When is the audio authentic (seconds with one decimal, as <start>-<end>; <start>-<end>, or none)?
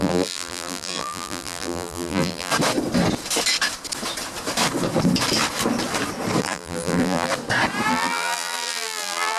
2.5-6.4; 7.3-7.9